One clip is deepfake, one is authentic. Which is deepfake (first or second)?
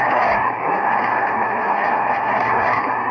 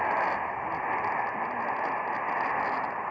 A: first